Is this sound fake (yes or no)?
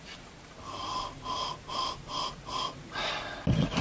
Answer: no